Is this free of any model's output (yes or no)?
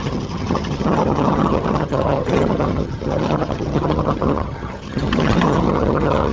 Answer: no